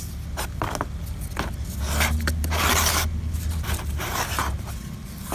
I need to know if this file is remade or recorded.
recorded